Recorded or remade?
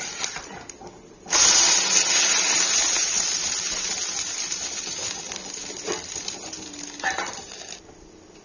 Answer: recorded